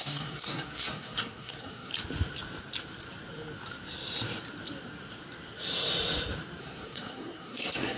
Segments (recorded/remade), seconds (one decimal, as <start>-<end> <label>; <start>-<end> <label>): 0.0-1.9 remade; 1.9-6.6 recorded; 6.6-8.0 remade